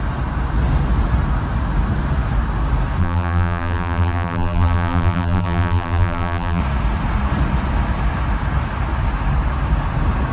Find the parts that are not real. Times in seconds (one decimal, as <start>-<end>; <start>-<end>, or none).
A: 3.0-6.6